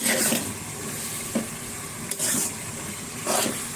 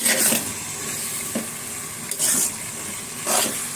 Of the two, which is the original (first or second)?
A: second